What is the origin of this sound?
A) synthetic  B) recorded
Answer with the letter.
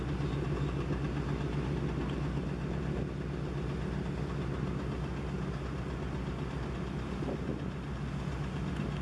B